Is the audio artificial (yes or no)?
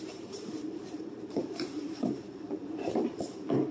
yes